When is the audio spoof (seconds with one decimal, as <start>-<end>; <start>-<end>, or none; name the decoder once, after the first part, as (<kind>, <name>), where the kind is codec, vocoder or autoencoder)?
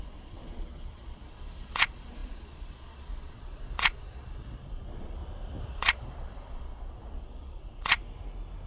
0.0-5.2 (vocoder, Vocos); 5.7-8.0